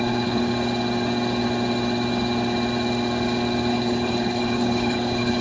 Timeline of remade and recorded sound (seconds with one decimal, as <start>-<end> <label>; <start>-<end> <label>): 0.0-0.5 remade; 0.5-3.7 recorded; 3.7-5.4 remade

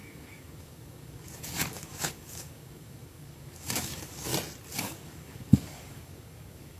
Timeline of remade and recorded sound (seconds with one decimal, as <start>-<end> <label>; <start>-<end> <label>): 0.0-4.3 remade; 4.3-4.8 recorded; 4.8-6.8 remade